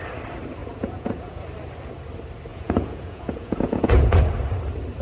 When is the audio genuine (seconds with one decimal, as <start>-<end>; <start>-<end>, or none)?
0.0-0.6; 1.4-2.5; 4.2-5.0